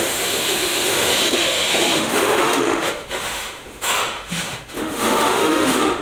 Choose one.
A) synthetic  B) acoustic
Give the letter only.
A